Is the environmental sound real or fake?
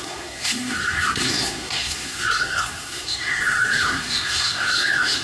fake